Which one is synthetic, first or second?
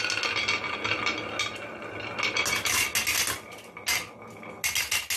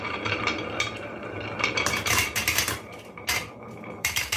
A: second